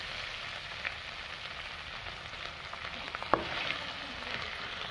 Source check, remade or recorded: recorded